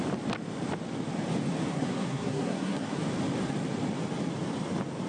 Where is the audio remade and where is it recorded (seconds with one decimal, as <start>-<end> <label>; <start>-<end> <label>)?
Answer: 0.0-1.7 recorded; 1.7-3.0 remade; 3.0-5.1 recorded